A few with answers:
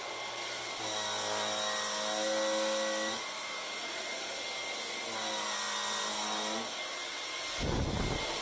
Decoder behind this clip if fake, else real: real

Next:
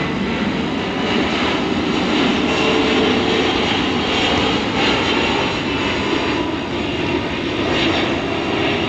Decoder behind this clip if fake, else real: real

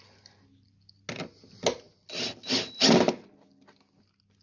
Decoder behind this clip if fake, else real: real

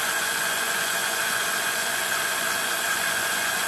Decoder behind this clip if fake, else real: fake, vocoder, Vocos